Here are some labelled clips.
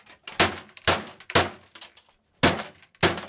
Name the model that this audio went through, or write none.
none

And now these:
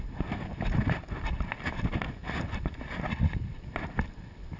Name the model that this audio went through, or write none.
none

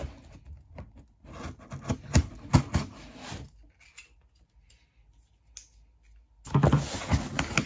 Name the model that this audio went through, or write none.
none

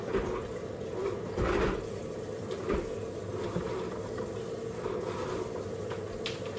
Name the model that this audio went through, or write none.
none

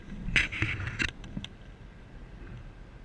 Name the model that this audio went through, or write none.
none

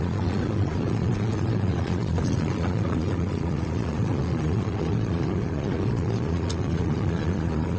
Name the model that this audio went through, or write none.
vocoder, Vocos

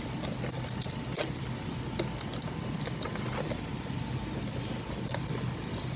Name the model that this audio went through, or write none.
none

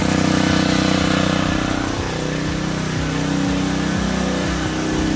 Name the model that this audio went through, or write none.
none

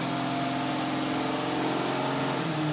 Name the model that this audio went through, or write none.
none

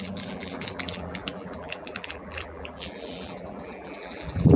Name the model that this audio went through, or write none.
vocoder, BigVGAN v2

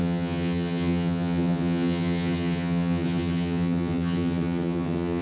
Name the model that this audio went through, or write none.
vocoder, HiFi-GAN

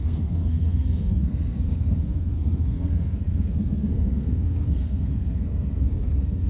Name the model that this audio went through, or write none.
codec, SNAC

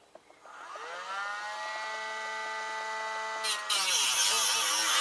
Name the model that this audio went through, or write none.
none